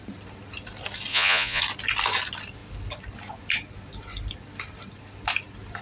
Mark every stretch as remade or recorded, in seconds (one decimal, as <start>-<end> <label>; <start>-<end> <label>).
0.0-1.1 recorded; 1.1-1.6 remade; 1.6-5.8 recorded